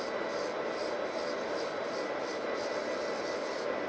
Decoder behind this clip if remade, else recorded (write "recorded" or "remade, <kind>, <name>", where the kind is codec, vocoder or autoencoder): recorded